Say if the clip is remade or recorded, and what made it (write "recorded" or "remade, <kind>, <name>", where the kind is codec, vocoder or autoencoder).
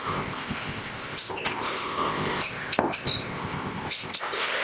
remade, codec, ZipCodec